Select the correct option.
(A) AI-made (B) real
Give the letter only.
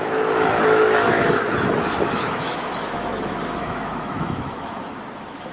A